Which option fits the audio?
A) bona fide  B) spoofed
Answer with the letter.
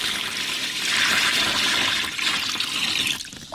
A